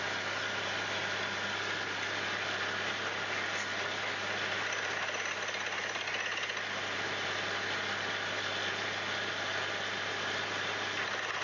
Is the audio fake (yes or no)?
no